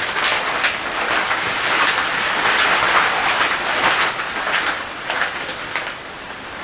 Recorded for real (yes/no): yes